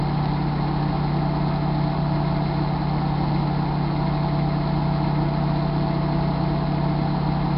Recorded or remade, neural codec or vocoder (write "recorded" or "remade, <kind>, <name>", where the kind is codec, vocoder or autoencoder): recorded